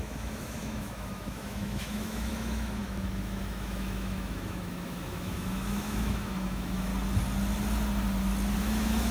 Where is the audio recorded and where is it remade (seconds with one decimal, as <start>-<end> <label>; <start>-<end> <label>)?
0.0-6.9 remade; 6.9-8.6 recorded; 8.6-9.1 remade